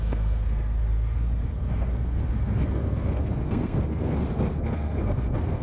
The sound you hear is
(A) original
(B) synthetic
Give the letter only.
B